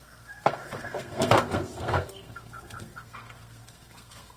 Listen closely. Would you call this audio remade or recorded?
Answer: remade